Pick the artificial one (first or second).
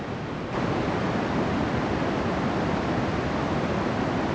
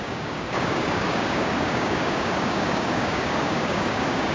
second